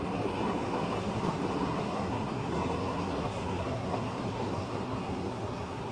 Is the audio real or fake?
fake